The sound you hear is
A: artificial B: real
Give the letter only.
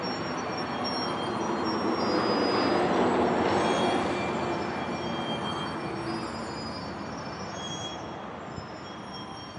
B